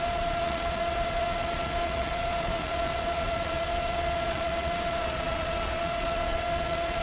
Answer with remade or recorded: remade